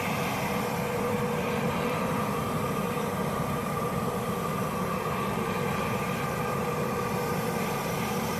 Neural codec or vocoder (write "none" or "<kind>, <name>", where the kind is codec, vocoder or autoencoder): vocoder, BigVGAN v2